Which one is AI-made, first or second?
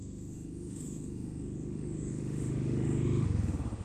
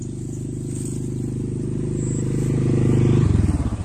first